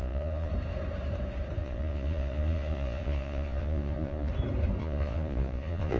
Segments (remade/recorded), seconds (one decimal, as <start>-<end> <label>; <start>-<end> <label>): 0.0-0.5 remade; 0.5-1.6 recorded; 1.6-4.3 remade; 4.3-4.8 recorded; 4.8-6.0 remade